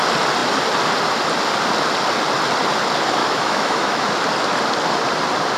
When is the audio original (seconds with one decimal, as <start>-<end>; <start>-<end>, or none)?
0.0-3.2; 4.1-5.6